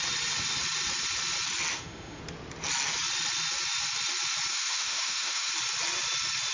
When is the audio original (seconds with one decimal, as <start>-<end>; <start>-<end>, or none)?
0.0-1.7; 2.2-4.5; 5.5-6.5

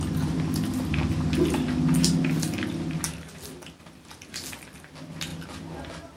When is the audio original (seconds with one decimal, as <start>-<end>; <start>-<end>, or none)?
0.0-6.2

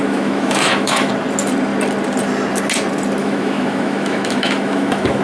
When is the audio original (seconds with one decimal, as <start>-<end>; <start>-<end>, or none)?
1.1-3.2